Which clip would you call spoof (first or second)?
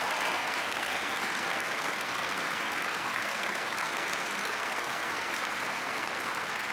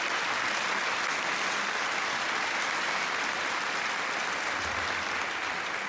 first